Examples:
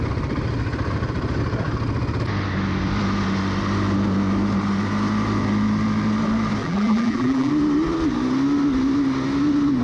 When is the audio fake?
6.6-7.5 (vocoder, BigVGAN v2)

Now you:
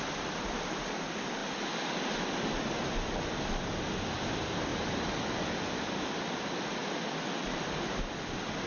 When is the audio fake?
0.0-1.4 (vocoder, BigVGAN v2); 3.6-4.7; 5.6-8.7

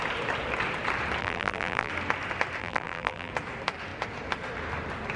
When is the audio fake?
1.2-1.9 (vocoder, BigVGAN v2); 2.6-3.3

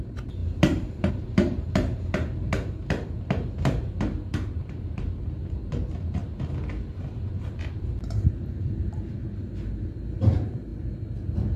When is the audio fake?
0.0-6.2 (vocoder, BigVGAN v2); 7.3-10.7

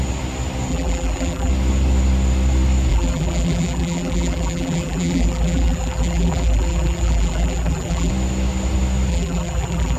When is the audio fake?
0.7-1.5 (vocoder, BigVGAN v2); 2.9-8.1; 9.1-10.0